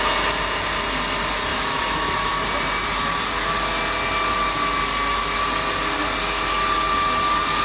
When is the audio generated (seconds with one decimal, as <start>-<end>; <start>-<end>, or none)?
1.5-2.3